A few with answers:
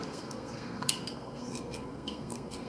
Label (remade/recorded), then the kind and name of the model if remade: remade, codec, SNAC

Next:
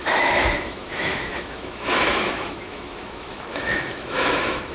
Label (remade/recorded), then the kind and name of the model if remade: remade, autoencoder, DAC-VAE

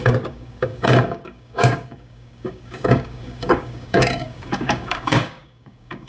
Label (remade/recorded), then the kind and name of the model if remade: remade, codec, DAC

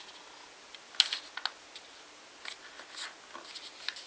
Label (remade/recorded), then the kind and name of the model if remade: recorded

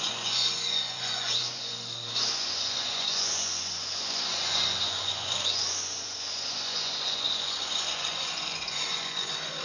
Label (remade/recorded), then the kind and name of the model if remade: remade, vocoder, Vocos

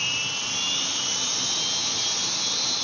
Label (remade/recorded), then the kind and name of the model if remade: recorded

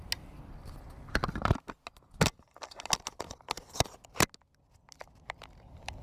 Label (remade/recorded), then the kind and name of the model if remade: recorded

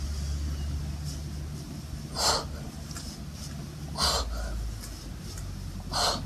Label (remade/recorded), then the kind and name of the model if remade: recorded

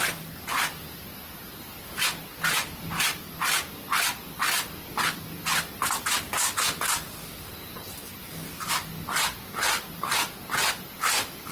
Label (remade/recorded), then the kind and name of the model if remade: recorded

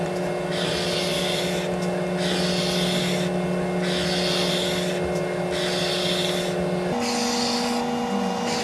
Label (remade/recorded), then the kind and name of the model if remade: recorded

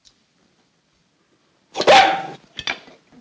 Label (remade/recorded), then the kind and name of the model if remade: recorded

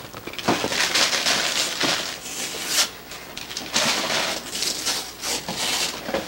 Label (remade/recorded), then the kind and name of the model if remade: recorded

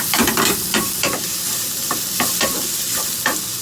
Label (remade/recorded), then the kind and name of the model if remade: recorded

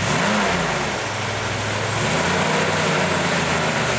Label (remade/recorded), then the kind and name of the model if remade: recorded